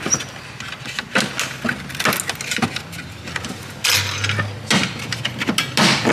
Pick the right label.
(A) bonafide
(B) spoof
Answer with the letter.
A